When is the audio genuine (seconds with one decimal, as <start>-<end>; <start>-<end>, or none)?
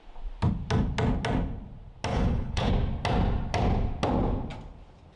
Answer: 0.0-2.1; 2.7-5.2